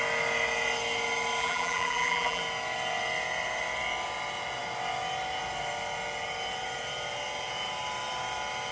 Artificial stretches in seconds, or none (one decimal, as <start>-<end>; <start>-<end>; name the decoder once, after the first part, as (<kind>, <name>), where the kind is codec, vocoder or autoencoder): 1.4-2.4 (vocoder, BigVGAN v2)